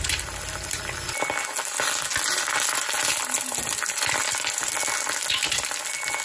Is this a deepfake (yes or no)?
no